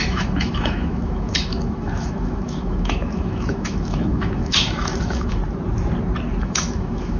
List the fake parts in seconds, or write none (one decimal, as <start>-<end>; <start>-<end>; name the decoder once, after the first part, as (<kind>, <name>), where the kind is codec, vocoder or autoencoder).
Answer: 0.0-5.4 (autoencoder, DAC-VAE); 6.4-7.2